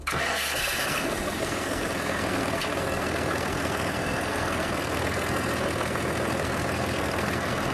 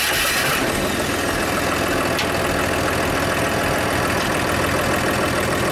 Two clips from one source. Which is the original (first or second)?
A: second